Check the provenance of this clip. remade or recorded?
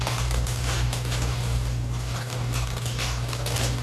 remade